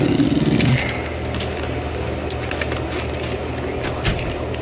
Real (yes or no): yes